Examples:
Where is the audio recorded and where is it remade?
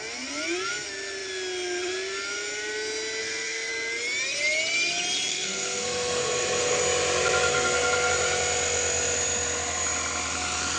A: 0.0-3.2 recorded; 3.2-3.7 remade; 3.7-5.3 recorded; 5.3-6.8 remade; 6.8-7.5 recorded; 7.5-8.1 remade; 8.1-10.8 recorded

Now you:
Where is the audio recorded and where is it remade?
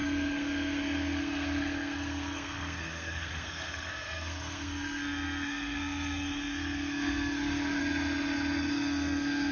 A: 0.0-7.8 remade; 7.8-8.7 recorded; 8.7-9.5 remade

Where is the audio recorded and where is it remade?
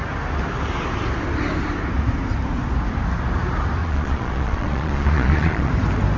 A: 0.0-3.8 recorded; 3.8-5.7 remade; 5.7-6.2 recorded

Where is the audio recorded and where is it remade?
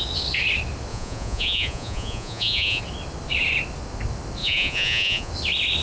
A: 0.0-0.9 recorded; 0.9-2.8 remade; 2.8-4.4 recorded; 4.4-5.3 remade; 5.3-5.8 recorded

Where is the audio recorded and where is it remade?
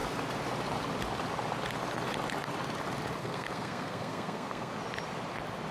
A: 0.0-3.2 recorded; 3.2-4.7 remade; 4.7-5.7 recorded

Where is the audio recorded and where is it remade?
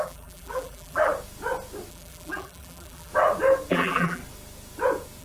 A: 0.0-1.1 remade; 1.1-1.9 recorded; 1.9-3.1 remade; 3.1-3.7 recorded; 3.7-4.2 remade; 4.2-5.2 recorded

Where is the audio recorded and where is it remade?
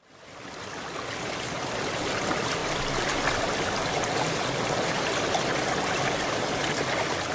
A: 0.0-7.3 recorded